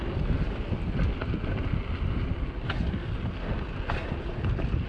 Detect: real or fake real